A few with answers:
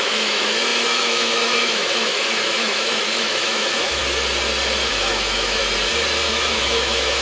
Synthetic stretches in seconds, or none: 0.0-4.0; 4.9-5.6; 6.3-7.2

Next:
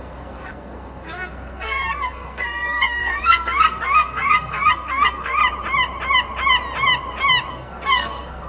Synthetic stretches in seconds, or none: 0.0-5.4; 7.5-8.5

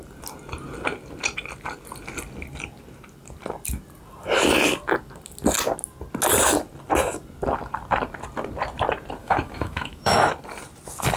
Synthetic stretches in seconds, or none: 9.2-10.3

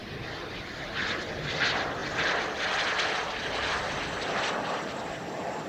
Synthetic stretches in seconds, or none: 0.0-1.3; 2.0-5.7

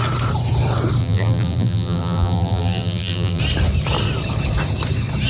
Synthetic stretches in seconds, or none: 1.0-3.4

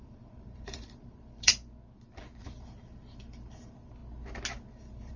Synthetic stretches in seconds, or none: 0.0-1.5; 2.4-4.0; 4.7-5.2

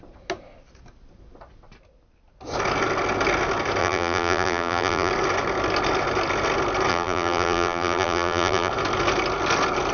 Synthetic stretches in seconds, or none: 3.8-5.1; 6.9-8.7